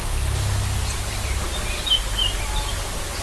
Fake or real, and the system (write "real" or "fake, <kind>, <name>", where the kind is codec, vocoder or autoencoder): real